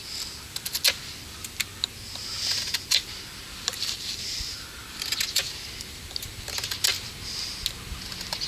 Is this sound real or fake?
real